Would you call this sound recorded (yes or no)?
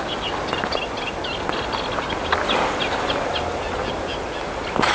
yes